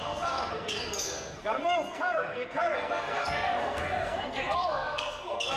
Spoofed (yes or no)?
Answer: yes